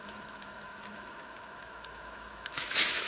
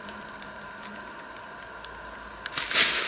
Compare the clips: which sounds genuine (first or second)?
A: second